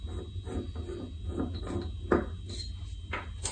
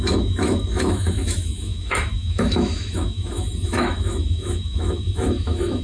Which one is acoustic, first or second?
first